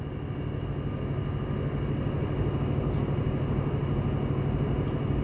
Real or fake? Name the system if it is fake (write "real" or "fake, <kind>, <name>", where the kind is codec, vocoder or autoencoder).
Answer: real